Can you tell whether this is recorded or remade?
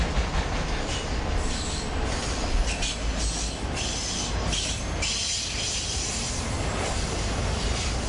recorded